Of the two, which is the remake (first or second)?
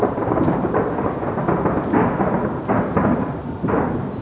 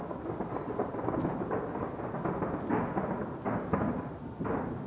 first